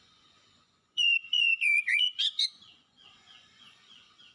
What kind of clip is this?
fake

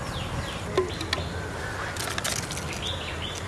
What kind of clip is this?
real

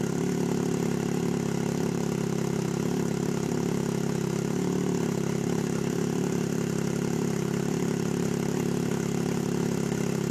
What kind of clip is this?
fake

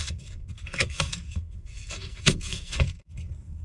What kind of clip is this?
fake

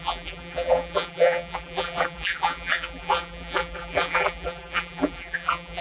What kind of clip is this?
fake